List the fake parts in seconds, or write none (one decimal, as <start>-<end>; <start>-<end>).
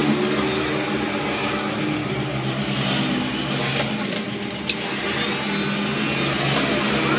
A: none